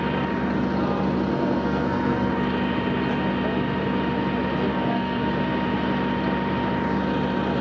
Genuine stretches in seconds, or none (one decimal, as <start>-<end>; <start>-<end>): 0.0-1.3; 2.3-4.7; 5.3-7.6